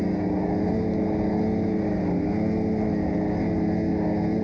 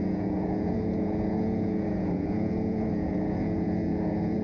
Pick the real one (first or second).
first